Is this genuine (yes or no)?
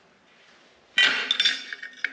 yes